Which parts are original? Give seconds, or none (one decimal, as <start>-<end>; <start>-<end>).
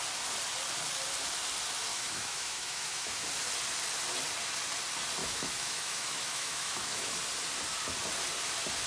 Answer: 0.0-1.9; 3.3-5.2; 7.2-8.9